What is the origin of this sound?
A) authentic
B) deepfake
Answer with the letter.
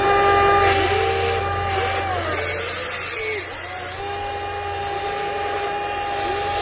A